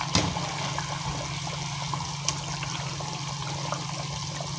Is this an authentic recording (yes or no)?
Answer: yes